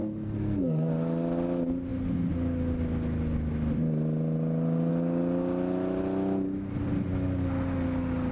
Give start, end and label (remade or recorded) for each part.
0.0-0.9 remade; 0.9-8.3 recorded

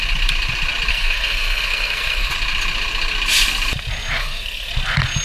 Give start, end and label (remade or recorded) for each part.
0.0-0.9 recorded; 0.9-2.3 remade; 2.3-4.2 recorded; 4.2-4.7 remade; 4.7-5.2 recorded

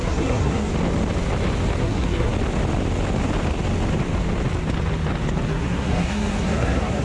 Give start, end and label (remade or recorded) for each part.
0.0-0.7 remade; 0.7-1.8 recorded; 1.8-2.3 remade; 2.3-5.5 recorded; 5.5-7.0 remade

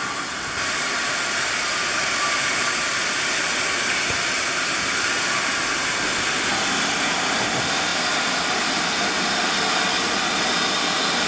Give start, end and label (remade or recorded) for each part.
0.0-11.3 recorded

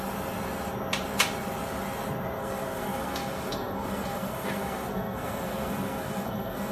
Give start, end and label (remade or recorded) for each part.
0.0-2.4 recorded; 2.4-6.7 remade

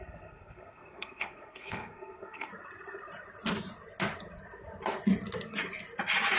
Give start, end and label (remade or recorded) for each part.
0.0-2.5 remade; 2.5-6.4 recorded

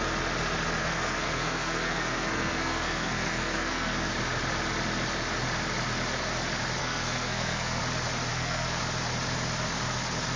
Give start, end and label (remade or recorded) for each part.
0.0-0.8 recorded; 0.8-4.1 remade; 4.1-6.8 recorded; 6.8-7.8 remade; 7.8-8.3 recorded; 8.3-8.8 remade; 8.8-10.4 recorded

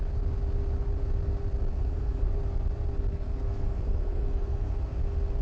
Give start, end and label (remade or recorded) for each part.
0.0-1.7 recorded; 1.7-2.3 remade; 2.3-3.1 recorded; 3.1-4.7 remade; 4.7-5.4 recorded